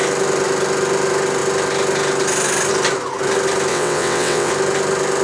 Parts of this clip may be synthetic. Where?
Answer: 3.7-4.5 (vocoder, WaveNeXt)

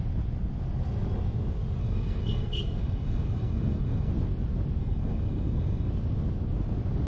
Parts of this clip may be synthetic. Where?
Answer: 1.8-4.1 (codec, SNAC); 4.8-5.9

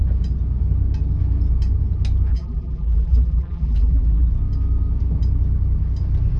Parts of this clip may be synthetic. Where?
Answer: 2.3-4.3 (vocoder, BigVGAN v2)

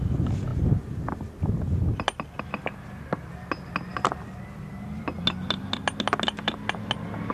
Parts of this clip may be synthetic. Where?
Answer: none

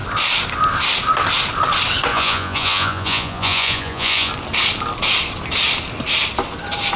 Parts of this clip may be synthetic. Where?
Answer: 2.1-4.3 (vocoder, Vocos)

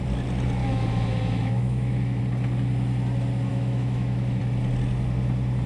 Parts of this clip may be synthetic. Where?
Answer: 0.6-2.2 (autoencoder, DAC-VAE); 3.5-4.4

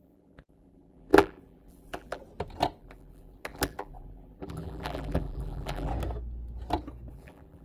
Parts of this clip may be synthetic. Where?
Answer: 0.0-2.2 (vocoder, BigVGAN v2); 2.8-5.9; 7.1-7.6

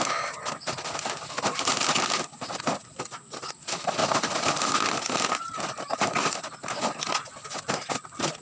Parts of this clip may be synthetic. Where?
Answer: none